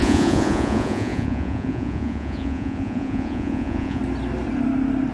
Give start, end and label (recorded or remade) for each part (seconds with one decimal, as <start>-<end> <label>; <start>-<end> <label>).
0.0-4.0 remade; 4.0-5.1 recorded